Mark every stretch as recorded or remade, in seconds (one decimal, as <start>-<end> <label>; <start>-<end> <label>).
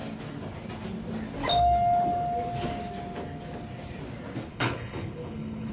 0.0-4.5 recorded; 4.5-5.7 remade